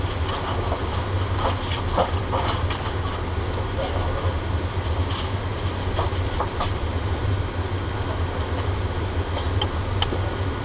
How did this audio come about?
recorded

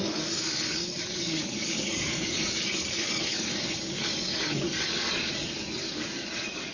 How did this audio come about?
remade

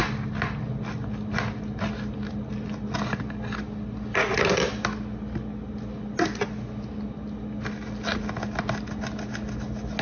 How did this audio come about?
recorded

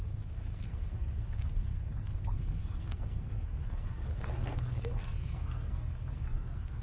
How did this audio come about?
remade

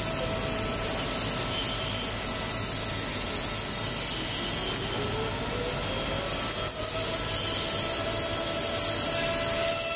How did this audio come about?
recorded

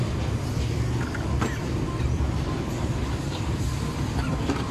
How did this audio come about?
recorded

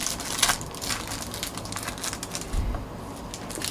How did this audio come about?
recorded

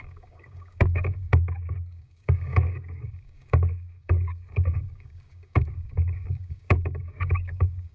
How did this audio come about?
remade